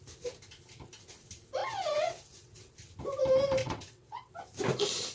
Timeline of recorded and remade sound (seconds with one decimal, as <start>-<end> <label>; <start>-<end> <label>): 0.0-1.6 recorded; 1.6-2.7 remade; 2.7-3.6 recorded; 3.6-4.3 remade; 4.3-5.1 recorded